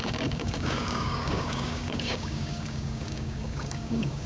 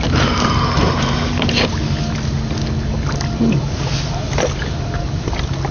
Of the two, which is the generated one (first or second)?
first